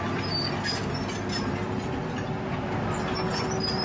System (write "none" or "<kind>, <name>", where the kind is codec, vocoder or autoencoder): none